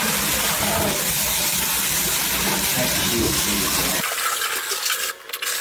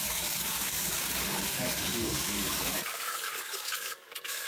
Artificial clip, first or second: second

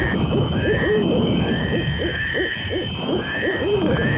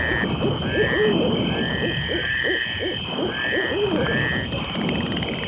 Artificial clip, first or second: first